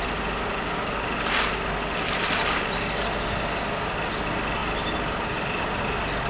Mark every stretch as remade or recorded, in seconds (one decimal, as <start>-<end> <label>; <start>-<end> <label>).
0.0-6.3 recorded